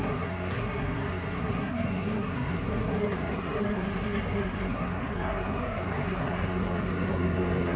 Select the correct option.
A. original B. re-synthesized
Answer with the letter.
B